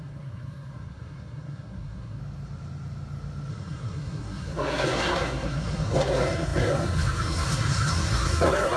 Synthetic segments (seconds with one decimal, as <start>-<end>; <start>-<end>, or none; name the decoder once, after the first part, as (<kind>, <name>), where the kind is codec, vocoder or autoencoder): 0.0-2.2 (codec, SNAC); 3.5-8.8